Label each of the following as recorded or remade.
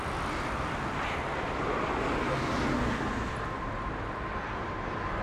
recorded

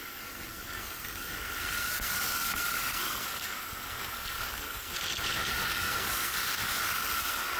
remade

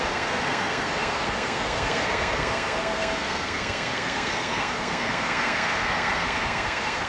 remade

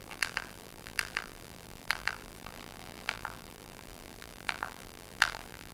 remade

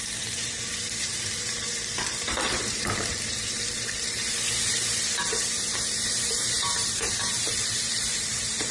remade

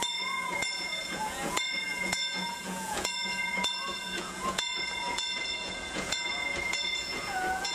remade